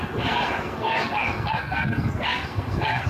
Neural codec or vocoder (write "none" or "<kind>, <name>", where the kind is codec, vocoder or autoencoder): codec, SNAC